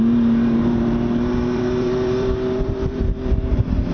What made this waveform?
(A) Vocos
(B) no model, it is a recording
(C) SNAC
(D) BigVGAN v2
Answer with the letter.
D